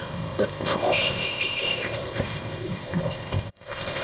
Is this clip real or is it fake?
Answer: fake